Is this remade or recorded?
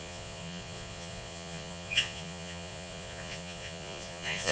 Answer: remade